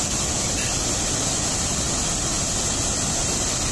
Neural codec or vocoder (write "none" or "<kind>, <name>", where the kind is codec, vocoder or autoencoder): none